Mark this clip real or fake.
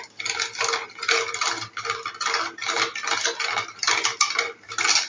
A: real